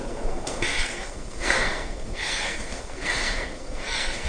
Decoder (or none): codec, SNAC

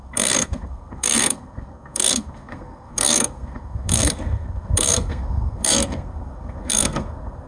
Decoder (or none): codec, SNAC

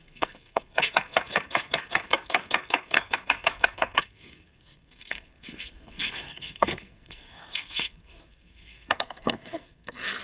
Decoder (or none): codec, SNAC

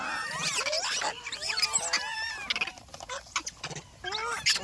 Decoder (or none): none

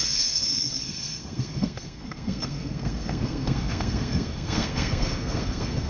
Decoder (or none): codec, SNAC